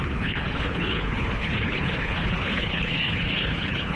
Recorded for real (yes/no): no